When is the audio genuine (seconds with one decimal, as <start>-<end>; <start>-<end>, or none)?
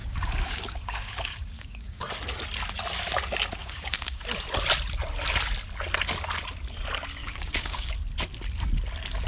2.0-3.6; 4.2-7.2; 7.9-9.3